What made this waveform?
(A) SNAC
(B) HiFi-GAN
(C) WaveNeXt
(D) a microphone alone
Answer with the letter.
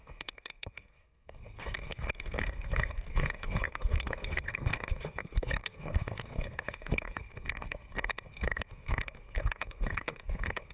A